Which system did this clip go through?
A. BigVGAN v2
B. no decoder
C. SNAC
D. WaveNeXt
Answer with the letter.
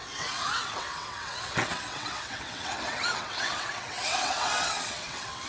D